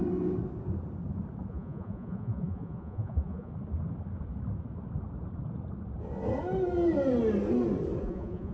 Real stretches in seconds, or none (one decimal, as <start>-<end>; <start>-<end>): 0.0-1.5; 3.5-8.0